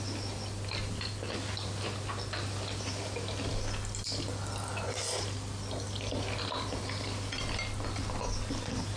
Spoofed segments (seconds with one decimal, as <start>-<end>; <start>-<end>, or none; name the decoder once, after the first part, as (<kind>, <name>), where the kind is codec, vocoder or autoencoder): none